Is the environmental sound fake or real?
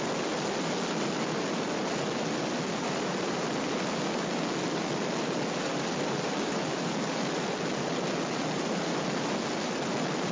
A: real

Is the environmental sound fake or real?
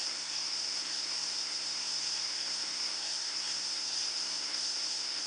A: fake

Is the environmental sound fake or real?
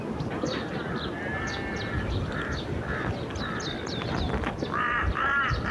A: real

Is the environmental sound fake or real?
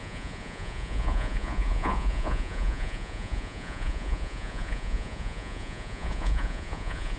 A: fake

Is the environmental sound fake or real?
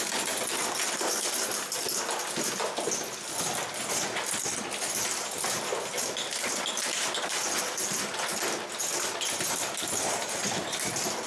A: real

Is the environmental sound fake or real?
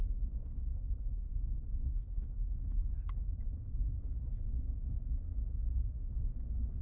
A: fake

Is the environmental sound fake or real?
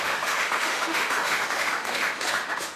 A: fake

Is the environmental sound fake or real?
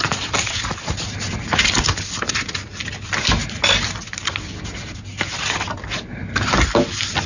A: real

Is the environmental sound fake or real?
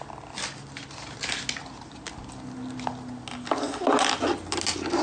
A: real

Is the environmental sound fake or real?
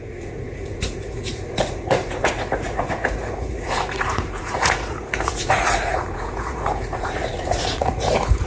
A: fake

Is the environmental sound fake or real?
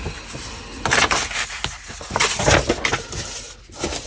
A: real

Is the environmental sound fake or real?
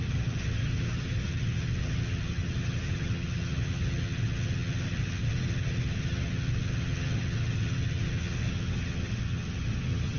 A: fake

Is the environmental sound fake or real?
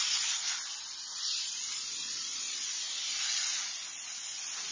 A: real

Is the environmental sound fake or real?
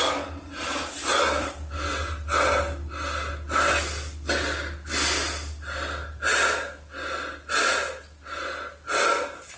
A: real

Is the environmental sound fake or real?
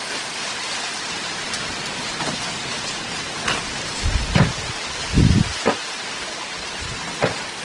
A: real